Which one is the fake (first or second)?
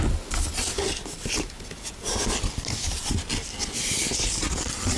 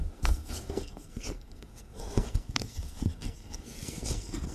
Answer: second